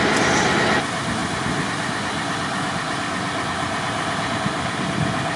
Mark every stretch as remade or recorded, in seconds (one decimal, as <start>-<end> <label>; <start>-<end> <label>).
0.0-5.4 recorded